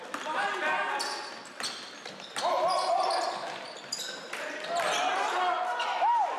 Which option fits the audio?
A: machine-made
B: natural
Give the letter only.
B